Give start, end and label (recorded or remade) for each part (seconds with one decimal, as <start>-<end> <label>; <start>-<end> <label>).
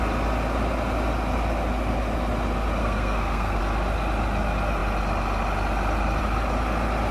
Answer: 0.0-2.8 recorded; 2.8-3.6 remade; 3.6-7.1 recorded